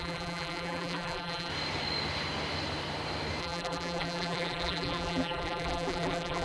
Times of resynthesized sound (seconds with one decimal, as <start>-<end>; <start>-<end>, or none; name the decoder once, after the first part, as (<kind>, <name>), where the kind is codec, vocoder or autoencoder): 0.0-1.5 (vocoder, BigVGAN v2); 3.4-6.4